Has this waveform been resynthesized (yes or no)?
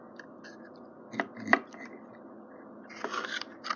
no